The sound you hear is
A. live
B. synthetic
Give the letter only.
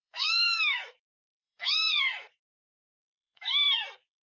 B